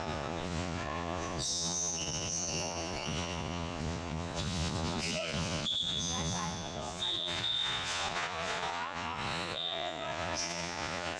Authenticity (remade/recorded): remade